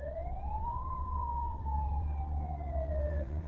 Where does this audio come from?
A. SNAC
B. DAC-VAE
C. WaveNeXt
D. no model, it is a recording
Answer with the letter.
C